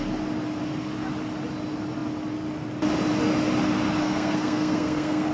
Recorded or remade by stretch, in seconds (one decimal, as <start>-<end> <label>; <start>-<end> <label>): 0.0-4.0 recorded; 4.0-5.3 remade